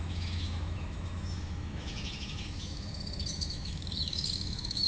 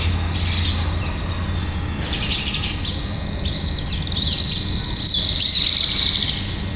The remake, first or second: first